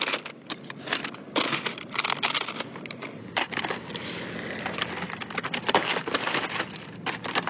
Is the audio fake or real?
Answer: real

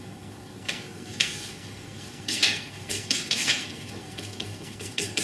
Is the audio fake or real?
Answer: fake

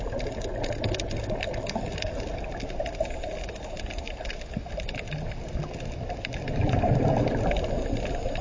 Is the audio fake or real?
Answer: real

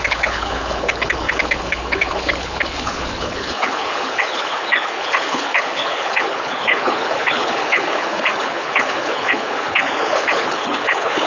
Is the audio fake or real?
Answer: fake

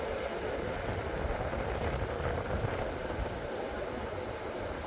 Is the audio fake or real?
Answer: real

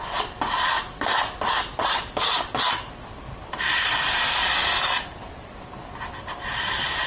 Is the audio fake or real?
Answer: real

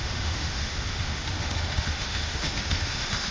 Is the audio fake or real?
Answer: fake